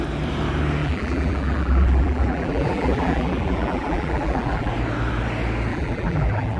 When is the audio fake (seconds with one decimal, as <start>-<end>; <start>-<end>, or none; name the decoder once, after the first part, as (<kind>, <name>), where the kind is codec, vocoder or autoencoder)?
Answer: 0.8-4.7 (vocoder, BigVGAN v2); 5.7-6.6